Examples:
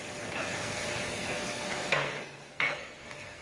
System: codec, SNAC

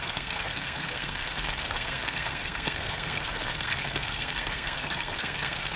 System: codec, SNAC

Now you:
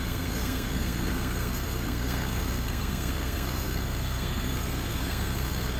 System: codec, SNAC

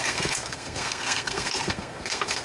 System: codec, SNAC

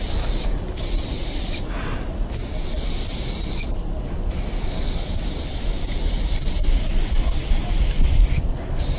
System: none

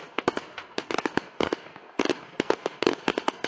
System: codec, SNAC